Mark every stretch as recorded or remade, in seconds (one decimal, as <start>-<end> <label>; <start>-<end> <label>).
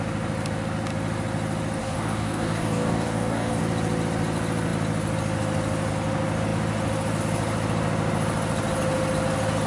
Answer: 0.0-1.8 recorded; 1.8-3.6 remade; 3.6-9.7 recorded